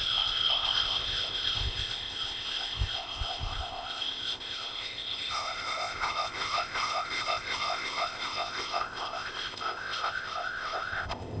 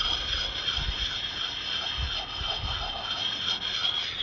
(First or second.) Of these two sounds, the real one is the second